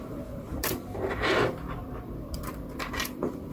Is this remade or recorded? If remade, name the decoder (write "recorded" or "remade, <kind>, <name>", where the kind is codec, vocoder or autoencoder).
remade, vocoder, BigVGAN v2